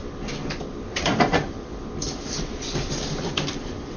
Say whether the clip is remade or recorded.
remade